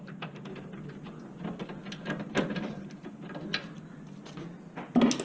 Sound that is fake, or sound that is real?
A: real